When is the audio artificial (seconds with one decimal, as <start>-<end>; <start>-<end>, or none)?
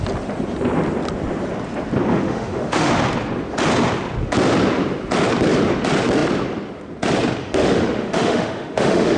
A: 2.1-2.9; 7.4-9.2